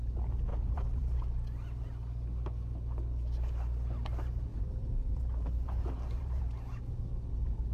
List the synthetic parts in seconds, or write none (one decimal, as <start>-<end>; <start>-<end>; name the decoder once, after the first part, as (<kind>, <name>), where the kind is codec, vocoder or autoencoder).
0.5-1.2 (vocoder, BigVGAN v2); 4.5-6.4